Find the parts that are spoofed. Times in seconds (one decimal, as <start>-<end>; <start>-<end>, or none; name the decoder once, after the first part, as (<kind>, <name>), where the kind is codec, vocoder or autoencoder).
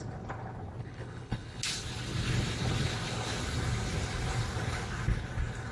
0.8-1.6 (codec, HILCodec)